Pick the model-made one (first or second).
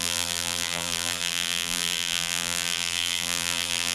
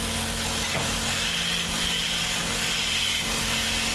first